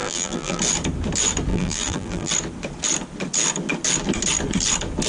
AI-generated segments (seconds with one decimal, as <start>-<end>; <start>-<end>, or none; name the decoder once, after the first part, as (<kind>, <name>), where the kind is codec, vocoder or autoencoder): 0.0-0.6 (vocoder, BigVGAN v2); 1.5-2.3